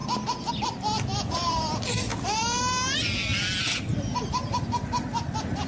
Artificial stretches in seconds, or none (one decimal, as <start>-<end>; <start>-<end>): 1.1-1.7; 2.1-2.6